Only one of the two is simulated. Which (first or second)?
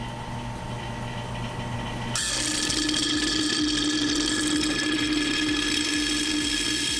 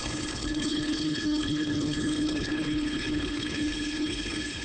second